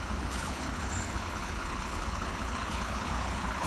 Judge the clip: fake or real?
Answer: fake